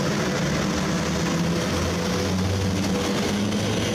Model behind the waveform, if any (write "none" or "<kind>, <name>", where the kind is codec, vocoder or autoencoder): none